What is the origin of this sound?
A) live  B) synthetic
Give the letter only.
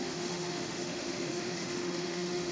B